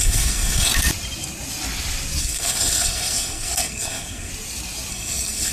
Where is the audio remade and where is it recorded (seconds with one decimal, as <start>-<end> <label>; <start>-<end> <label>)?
0.0-0.7 remade; 0.7-2.2 recorded; 2.2-4.3 remade; 4.3-4.9 recorded; 4.9-5.5 remade